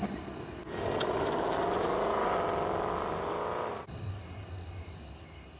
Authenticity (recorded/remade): recorded